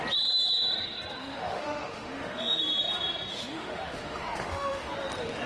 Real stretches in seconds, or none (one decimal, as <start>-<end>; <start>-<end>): 0.0-1.2; 2.6-3.3; 4.9-5.5